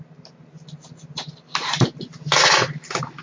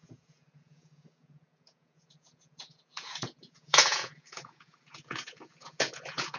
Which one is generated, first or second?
second